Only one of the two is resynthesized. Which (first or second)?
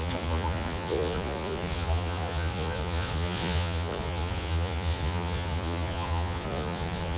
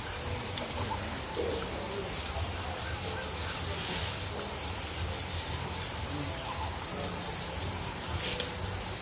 first